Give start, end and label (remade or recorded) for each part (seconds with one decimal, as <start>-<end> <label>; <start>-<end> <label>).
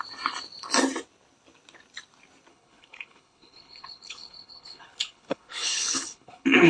0.0-2.5 recorded; 2.5-6.7 remade